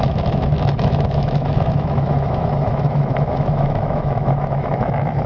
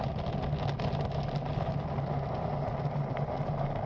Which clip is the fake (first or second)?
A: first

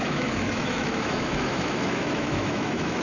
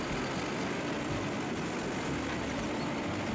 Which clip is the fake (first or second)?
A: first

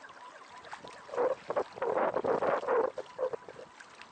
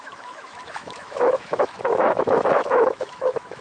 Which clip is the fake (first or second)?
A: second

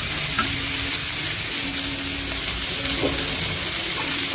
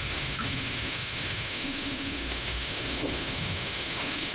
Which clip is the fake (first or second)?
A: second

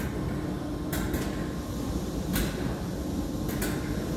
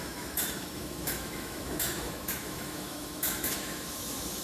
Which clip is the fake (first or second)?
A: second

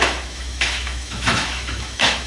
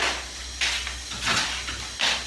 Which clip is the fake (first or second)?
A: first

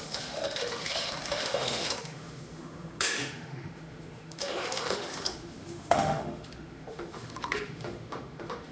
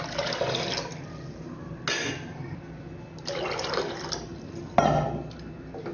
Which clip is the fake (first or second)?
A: first